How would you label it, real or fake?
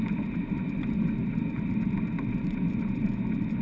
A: real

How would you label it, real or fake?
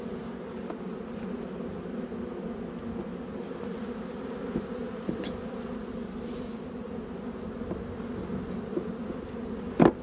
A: real